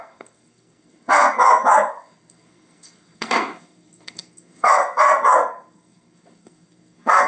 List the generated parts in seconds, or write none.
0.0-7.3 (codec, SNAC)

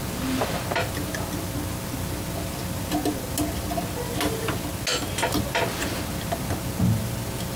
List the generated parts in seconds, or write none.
none

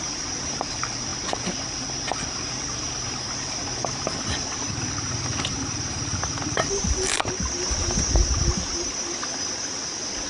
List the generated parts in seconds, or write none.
none

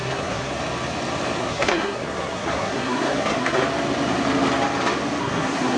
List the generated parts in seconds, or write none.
0.0-0.5 (codec, SNAC); 1.4-3.6; 5.2-5.8

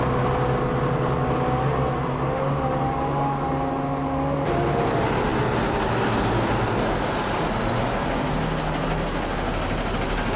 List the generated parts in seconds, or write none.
none